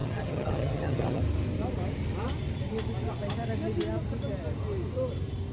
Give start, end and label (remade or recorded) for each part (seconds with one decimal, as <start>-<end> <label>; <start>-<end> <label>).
0.0-1.2 remade; 1.2-5.5 recorded